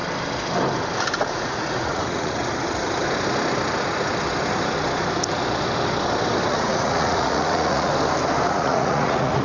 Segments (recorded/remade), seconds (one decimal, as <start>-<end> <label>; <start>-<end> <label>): 0.0-1.2 recorded; 1.2-2.4 remade; 2.4-6.5 recorded; 6.5-7.9 remade; 7.9-8.5 recorded; 8.5-9.4 remade